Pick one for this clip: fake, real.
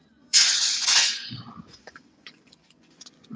fake